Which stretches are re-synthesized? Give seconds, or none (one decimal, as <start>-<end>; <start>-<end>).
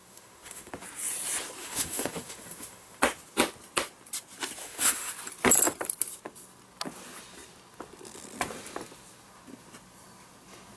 0.0-0.7; 1.6-3.0; 4.6-5.1